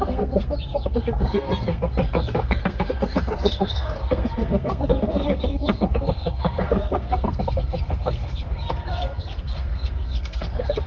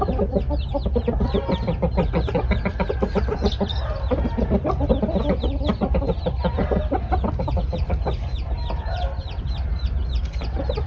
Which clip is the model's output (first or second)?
first